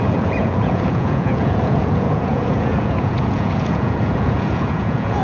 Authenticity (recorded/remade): remade